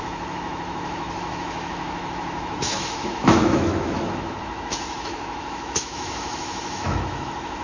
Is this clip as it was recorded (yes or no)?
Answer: no